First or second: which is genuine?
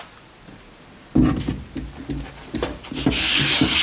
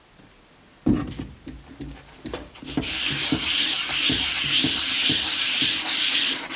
first